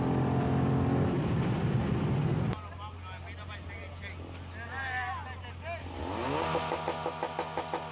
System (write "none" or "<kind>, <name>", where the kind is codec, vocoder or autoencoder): none